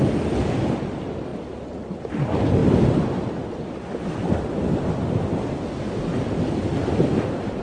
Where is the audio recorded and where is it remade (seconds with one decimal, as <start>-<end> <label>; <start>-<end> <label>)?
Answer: 0.0-7.6 recorded